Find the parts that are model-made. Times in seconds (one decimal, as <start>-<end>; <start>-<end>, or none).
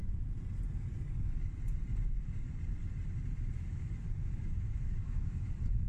3.5-5.9